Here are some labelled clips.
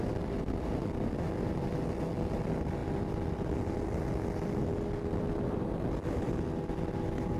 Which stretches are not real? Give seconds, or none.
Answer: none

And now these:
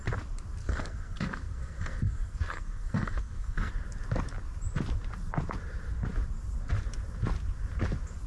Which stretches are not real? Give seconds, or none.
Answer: 0.6-3.7 (codec, SNAC)